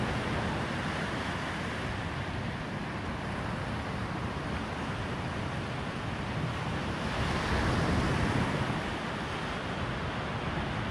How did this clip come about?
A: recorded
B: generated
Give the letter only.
A